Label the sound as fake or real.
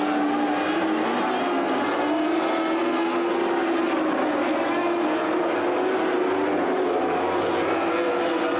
real